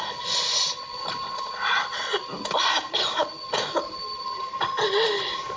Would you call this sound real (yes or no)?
yes